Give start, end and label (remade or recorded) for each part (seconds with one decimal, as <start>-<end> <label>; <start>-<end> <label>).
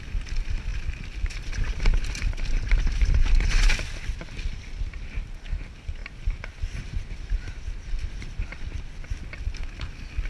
0.0-10.3 recorded